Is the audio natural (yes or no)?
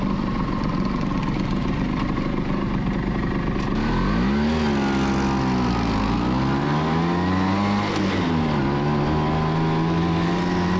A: yes